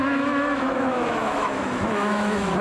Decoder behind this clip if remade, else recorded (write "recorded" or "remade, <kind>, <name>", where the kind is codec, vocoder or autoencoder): remade, autoencoder, DAC-VAE